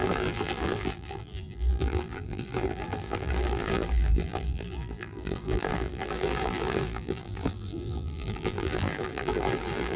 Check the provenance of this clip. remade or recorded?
remade